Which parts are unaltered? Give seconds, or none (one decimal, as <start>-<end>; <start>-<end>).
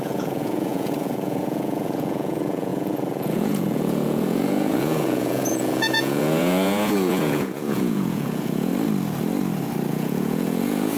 8.7-9.9